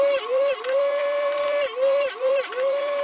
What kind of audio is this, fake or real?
fake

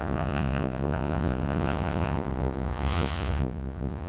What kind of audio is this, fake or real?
fake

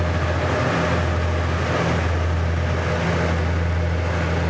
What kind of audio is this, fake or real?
real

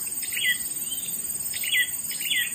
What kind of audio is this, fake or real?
real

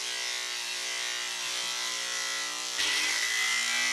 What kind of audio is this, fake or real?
real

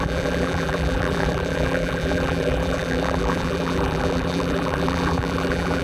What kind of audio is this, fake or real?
fake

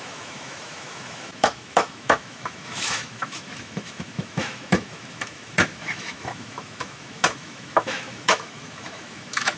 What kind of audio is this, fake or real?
fake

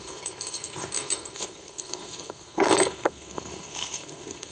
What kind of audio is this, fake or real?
fake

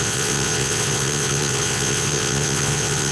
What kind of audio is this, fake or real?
fake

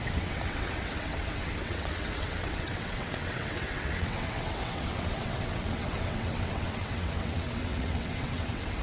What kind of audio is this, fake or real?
fake